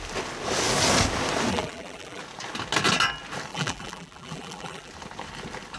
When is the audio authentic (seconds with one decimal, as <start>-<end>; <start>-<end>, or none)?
0.0-1.5; 2.2-3.5; 4.9-5.8